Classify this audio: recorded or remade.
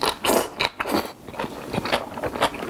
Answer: recorded